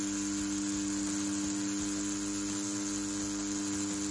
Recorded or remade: recorded